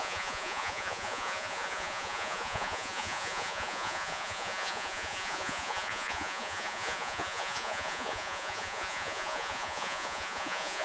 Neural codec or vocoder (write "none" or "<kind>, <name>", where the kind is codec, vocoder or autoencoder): vocoder, Vocos